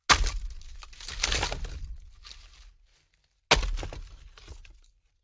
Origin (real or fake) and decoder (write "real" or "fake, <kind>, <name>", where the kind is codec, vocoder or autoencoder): real